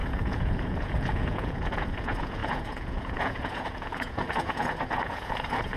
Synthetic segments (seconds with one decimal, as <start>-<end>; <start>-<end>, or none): 0.0-5.8